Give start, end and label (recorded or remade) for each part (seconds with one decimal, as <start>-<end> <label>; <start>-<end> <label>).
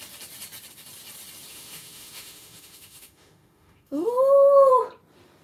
0.0-1.5 recorded; 1.5-4.7 remade; 4.7-5.4 recorded